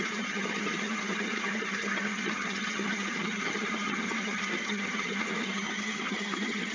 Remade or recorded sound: remade